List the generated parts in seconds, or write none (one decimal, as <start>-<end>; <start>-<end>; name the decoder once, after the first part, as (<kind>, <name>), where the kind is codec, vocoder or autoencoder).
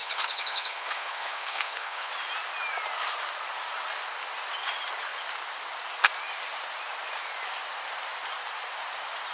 0.0-2.1 (codec, HILCodec)